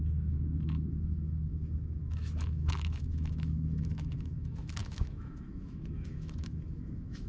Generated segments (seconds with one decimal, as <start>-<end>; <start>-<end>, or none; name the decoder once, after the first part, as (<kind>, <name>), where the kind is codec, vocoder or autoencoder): 0.0-7.3 (autoencoder, DAC-VAE)